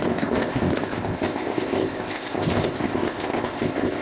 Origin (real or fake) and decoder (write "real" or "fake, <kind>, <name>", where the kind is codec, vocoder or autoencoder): fake, codec, ZipCodec